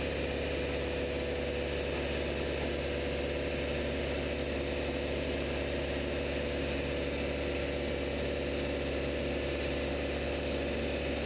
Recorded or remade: recorded